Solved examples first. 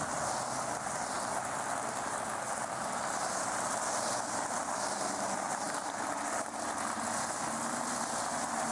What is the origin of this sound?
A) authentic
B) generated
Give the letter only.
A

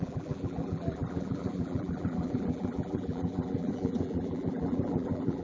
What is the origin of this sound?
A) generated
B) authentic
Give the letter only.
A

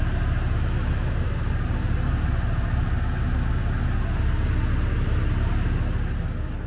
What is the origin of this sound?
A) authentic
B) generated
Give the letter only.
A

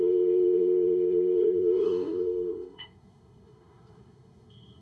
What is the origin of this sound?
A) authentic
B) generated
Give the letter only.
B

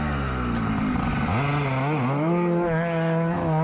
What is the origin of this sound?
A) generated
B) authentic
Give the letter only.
B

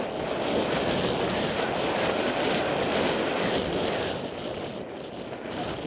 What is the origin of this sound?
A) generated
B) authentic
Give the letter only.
B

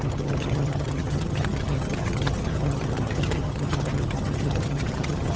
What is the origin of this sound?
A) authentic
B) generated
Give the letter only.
B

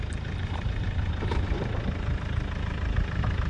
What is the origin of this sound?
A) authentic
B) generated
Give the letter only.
B